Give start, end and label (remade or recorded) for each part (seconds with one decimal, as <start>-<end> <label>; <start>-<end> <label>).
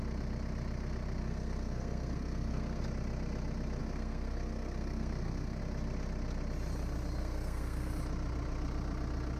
0.0-1.2 recorded; 1.2-2.8 remade; 2.8-3.8 recorded; 3.8-5.6 remade; 5.6-7.2 recorded; 7.2-7.9 remade; 7.9-9.4 recorded